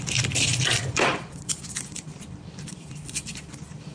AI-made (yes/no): yes